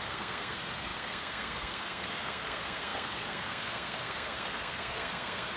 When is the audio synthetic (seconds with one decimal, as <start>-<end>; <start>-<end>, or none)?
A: 0.0-5.6